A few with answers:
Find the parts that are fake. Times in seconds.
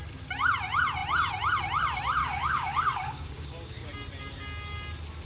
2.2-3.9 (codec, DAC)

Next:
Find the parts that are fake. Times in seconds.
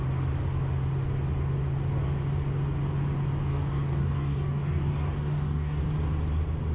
3.5-5.8 (codec, DAC)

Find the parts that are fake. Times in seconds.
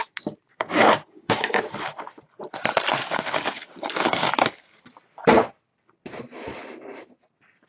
0.5-1.6 (codec, DAC); 3.0-4.8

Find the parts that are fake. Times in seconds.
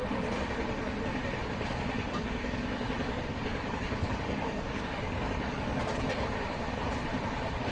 1.7-5.8 (codec, DAC)